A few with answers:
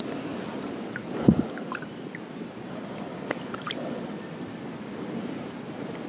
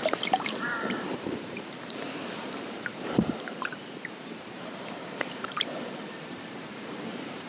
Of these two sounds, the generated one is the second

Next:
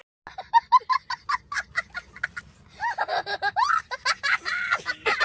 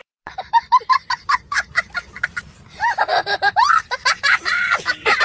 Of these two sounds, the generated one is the second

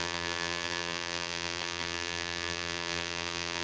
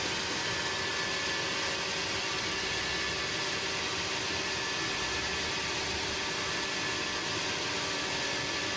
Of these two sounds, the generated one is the first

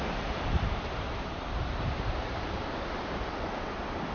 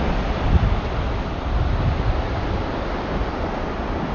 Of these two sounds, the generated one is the first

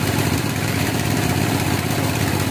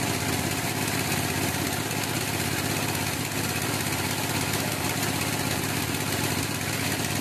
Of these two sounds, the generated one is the first